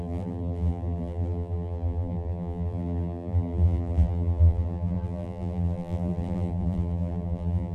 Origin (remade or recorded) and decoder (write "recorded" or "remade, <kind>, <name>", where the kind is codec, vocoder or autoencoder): remade, vocoder, BigVGAN v2